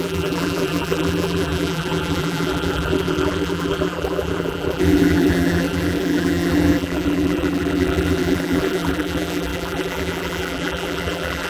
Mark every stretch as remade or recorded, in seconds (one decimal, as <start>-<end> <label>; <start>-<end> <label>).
0.0-11.5 remade